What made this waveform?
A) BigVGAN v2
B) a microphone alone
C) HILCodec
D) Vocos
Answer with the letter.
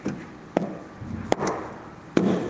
B